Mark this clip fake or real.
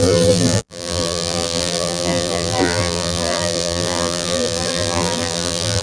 fake